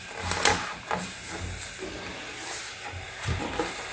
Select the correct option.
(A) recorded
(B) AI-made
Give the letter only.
A